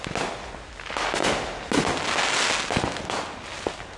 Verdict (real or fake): real